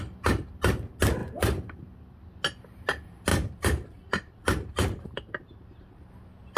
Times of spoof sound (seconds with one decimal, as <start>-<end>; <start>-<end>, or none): 1.2-1.8; 3.3-6.1